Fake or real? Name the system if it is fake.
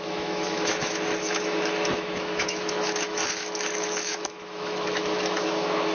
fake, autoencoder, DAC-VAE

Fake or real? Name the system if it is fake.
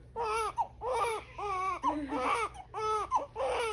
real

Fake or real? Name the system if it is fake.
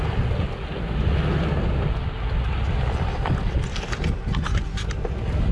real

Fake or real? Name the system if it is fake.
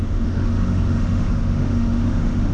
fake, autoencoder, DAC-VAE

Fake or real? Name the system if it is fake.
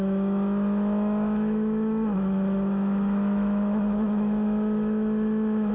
fake, autoencoder, DAC-VAE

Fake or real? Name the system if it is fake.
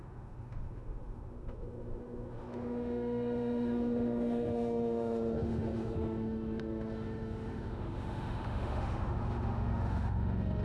fake, autoencoder, DAC-VAE